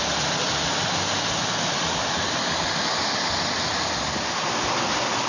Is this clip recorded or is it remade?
recorded